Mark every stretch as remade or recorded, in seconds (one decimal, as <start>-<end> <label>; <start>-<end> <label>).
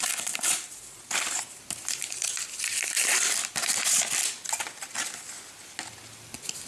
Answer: 0.0-3.9 remade; 3.9-6.7 recorded